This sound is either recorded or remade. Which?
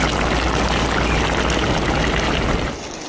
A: recorded